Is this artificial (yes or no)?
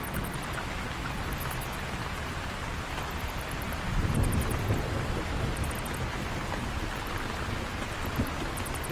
no